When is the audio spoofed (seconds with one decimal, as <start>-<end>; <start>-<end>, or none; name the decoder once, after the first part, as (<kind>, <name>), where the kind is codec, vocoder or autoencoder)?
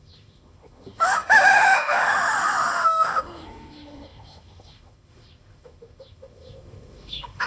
0.0-7.5 (autoencoder, DAC-VAE)